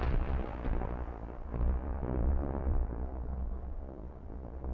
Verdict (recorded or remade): remade